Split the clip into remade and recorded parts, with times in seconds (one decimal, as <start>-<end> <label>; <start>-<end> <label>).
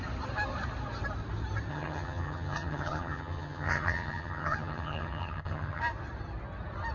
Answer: 0.0-1.7 recorded; 1.7-5.8 remade; 5.8-6.9 recorded